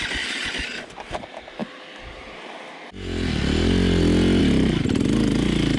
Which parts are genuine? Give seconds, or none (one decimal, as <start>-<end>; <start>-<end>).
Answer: 0.0-5.8